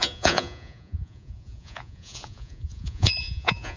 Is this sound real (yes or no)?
no